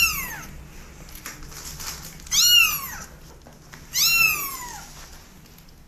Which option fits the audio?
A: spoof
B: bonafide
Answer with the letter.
B